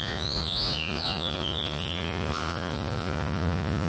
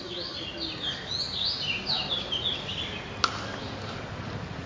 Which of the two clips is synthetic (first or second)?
first